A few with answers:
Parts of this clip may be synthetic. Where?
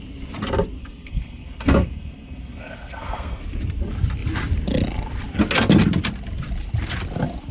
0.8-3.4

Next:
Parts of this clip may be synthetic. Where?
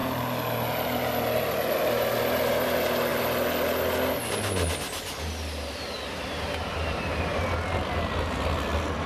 none